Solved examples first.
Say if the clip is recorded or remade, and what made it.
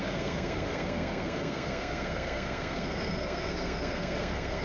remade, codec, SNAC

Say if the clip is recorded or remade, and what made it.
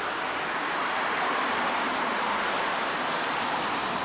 recorded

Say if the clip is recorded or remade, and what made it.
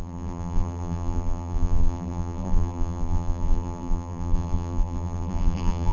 remade, vocoder, BigVGAN v2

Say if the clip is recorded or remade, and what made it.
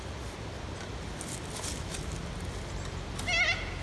recorded